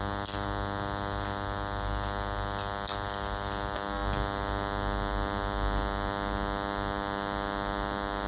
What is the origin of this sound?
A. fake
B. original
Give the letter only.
B